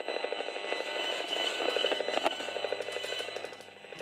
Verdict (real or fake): real